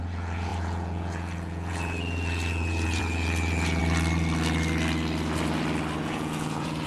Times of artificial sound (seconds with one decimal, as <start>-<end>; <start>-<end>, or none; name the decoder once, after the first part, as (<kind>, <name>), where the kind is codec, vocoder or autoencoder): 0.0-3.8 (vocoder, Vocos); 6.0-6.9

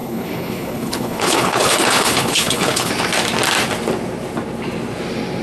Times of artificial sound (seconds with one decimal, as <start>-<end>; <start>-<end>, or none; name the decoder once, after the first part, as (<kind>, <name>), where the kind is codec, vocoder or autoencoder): 0.0-2.9 (codec, HILCodec)

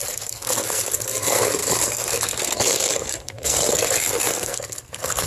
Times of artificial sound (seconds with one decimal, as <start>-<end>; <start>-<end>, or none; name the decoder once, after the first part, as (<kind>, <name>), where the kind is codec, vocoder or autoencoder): 0.0-5.3 (codec, SNAC)

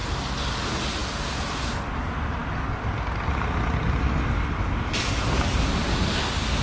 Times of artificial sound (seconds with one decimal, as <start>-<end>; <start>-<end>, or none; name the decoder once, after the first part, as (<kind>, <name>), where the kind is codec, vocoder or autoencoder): none

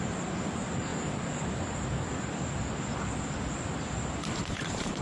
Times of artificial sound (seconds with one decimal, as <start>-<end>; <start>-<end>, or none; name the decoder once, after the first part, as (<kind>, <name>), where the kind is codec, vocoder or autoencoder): none

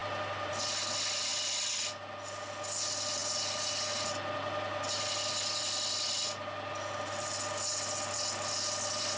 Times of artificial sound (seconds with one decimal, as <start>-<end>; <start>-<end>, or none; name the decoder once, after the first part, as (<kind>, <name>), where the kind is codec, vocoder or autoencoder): none

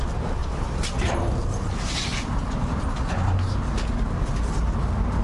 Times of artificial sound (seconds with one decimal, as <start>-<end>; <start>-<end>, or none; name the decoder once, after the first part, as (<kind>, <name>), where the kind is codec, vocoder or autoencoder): 0.4-1.6 (vocoder, BigVGAN v2)